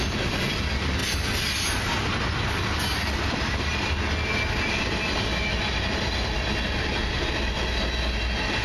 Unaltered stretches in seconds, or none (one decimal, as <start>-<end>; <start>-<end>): 0.0-8.6